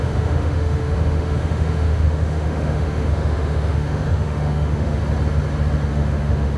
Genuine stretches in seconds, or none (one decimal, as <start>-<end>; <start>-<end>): 5.0-5.9